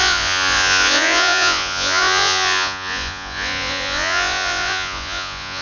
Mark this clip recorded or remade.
remade